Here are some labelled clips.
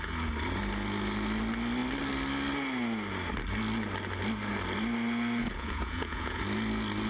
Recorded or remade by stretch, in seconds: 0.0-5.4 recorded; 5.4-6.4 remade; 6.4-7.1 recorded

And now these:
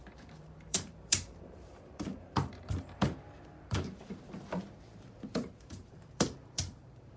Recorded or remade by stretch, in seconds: 0.0-7.2 remade

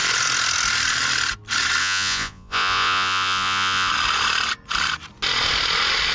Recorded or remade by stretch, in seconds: 0.0-1.8 recorded; 1.8-3.9 remade; 3.9-6.1 recorded

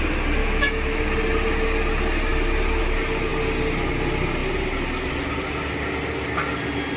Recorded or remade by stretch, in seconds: 0.0-0.4 recorded; 0.4-1.0 remade; 1.0-7.0 recorded

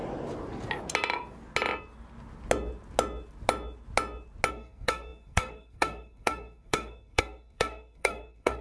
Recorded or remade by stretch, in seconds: 0.0-4.5 recorded; 4.5-8.6 remade

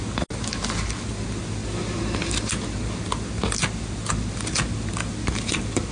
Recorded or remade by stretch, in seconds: 0.0-5.9 recorded